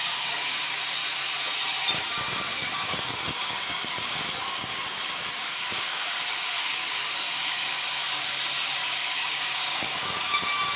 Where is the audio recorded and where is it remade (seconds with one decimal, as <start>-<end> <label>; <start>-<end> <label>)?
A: 0.0-1.0 remade; 1.0-2.0 recorded; 2.0-10.8 remade